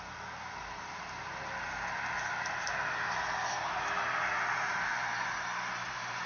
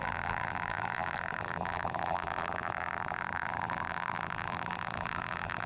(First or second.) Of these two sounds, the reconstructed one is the second